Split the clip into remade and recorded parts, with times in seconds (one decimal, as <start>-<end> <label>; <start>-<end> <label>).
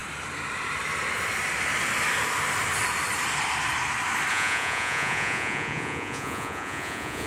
0.0-4.3 recorded; 4.3-7.3 remade